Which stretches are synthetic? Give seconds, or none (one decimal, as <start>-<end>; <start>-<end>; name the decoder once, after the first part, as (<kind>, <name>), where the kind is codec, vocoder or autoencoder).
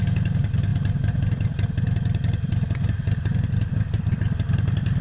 none